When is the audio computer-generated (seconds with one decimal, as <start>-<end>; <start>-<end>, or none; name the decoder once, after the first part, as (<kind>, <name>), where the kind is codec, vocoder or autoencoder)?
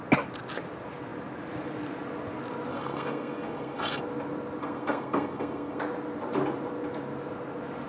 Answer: 2.7-4.0 (codec, SNAC); 4.6-5.8